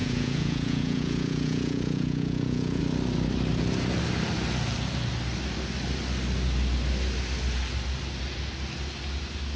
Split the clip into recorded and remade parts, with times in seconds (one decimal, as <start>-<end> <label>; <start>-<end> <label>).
0.0-2.8 remade; 2.8-9.6 recorded